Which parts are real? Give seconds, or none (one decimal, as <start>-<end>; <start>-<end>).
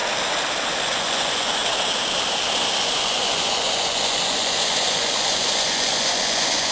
0.0-0.8; 1.6-2.8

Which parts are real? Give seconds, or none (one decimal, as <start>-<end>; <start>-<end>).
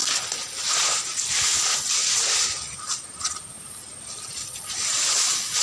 0.0-5.6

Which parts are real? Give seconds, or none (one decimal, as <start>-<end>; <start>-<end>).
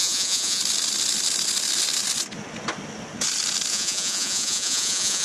0.6-3.7